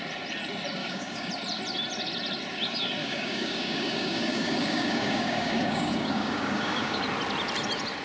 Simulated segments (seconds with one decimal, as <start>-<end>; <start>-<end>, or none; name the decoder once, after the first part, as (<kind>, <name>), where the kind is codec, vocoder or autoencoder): 0.8-1.3 (codec, DAC); 3.0-7.0